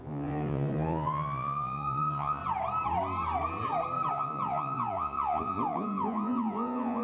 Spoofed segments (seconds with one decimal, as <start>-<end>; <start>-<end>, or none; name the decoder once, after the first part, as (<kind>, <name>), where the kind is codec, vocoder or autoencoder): 0.0-2.4 (vocoder, Vocos); 4.1-7.0